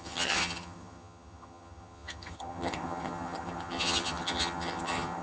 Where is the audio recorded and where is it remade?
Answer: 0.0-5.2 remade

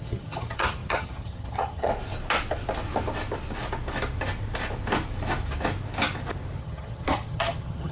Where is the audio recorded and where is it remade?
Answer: 0.0-1.9 remade; 1.9-6.6 recorded; 6.6-7.9 remade